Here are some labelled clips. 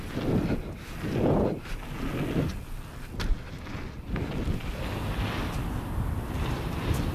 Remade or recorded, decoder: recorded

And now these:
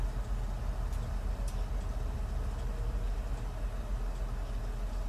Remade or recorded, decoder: recorded